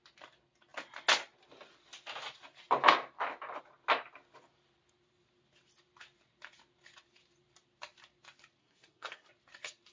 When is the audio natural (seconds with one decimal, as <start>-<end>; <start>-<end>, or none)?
0.0-8.6; 9.3-9.9